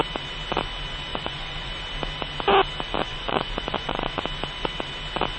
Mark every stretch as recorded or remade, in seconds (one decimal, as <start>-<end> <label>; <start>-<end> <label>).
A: 0.0-1.1 recorded; 1.1-1.7 remade; 1.7-3.0 recorded; 3.0-4.2 remade; 4.2-5.4 recorded

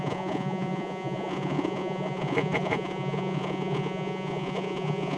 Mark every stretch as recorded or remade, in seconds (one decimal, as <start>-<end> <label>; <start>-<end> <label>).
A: 0.0-5.2 remade

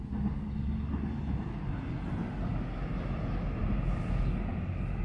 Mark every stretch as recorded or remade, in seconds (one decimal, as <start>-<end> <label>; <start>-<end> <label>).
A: 0.0-5.0 recorded

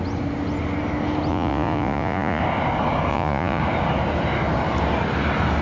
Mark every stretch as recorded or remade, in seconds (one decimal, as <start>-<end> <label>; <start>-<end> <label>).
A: 0.0-1.3 recorded; 1.3-2.4 remade; 2.4-3.1 recorded; 3.1-3.6 remade; 3.6-5.6 recorded

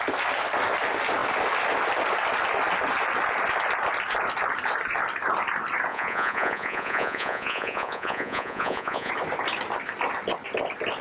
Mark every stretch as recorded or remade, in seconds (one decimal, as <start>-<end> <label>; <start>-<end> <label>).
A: 0.0-5.9 recorded; 5.9-9.1 remade; 9.1-11.0 recorded